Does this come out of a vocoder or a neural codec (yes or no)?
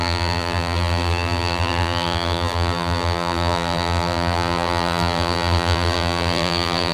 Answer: yes